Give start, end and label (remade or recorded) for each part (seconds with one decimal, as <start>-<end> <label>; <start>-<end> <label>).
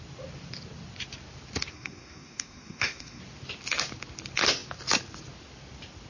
0.0-1.7 recorded; 1.7-3.2 remade; 3.2-6.1 recorded